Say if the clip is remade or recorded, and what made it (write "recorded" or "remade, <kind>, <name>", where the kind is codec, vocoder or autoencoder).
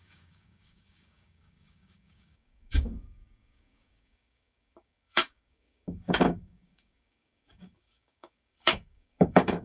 remade, codec, DAC